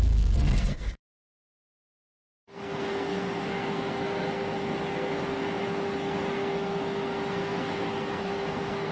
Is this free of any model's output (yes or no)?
no